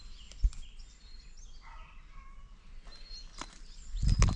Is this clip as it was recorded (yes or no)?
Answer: yes